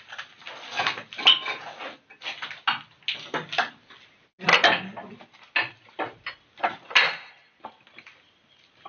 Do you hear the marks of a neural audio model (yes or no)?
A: no